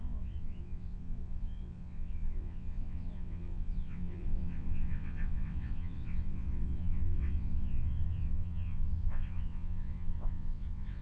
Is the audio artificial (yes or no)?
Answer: yes